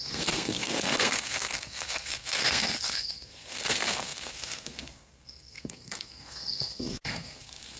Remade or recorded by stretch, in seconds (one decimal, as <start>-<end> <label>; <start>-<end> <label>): 0.0-7.8 remade